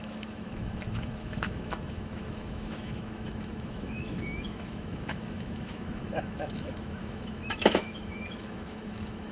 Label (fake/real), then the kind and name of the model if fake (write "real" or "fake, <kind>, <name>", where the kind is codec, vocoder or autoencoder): fake, autoencoder, DAC-VAE